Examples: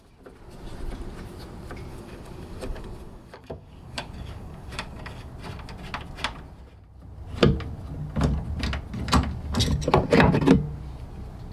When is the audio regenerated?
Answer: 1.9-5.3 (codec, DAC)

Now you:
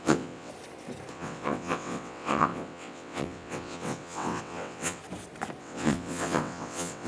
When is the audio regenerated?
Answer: 0.0-0.5 (vocoder, WaveNeXt); 1.1-5.0; 5.6-7.1

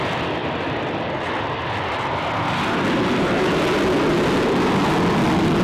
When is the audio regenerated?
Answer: none

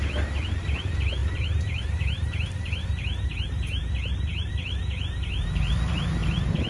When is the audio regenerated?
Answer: 1.2-4.5 (vocoder, BigVGAN v2); 6.2-6.7

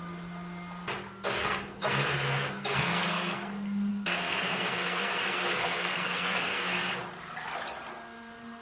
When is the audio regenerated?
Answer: 1.4-3.5 (codec, SNAC); 3.9-6.8

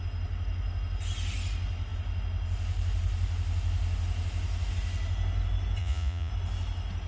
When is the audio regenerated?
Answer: 5.8-6.3 (vocoder, Vocos)